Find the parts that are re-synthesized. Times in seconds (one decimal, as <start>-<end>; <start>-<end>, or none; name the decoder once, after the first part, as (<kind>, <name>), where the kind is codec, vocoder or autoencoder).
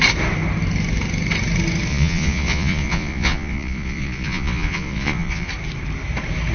1.9-5.5 (vocoder, Vocos)